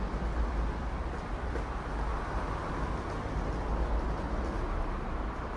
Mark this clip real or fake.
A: real